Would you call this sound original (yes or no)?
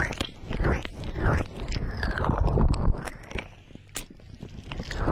yes